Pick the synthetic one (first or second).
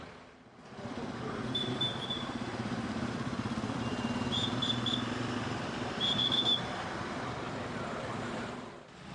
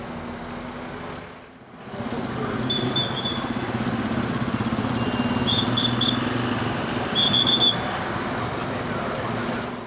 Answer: first